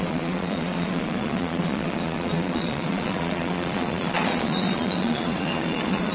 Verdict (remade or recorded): remade